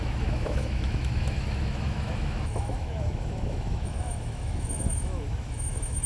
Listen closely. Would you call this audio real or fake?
fake